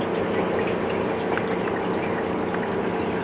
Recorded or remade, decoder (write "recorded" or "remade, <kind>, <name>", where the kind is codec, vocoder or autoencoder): recorded